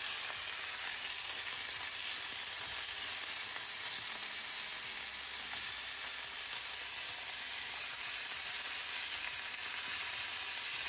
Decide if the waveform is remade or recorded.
recorded